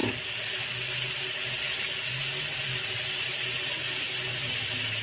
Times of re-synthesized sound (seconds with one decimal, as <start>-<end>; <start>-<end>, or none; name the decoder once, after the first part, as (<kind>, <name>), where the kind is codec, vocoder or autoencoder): 1.6-2.2 (vocoder, BigVGAN v2); 4.3-5.0